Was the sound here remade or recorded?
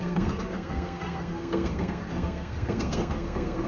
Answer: remade